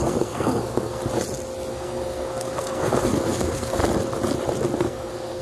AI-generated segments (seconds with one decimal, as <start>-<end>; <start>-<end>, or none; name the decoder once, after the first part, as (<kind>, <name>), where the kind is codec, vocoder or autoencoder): 0.0-1.0 (codec, SNAC); 1.7-3.8; 4.8-5.4